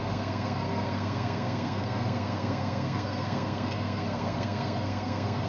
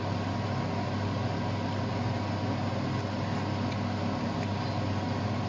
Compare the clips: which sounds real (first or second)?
second